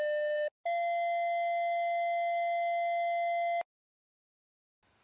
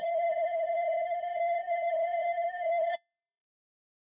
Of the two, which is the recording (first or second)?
first